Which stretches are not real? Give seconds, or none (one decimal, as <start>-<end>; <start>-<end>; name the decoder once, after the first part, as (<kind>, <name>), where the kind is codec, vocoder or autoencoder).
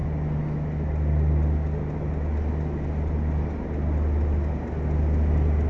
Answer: none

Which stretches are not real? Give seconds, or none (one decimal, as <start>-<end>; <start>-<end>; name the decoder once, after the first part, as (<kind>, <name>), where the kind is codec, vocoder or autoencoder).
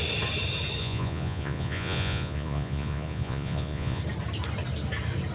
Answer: 0.8-4.0 (vocoder, Vocos)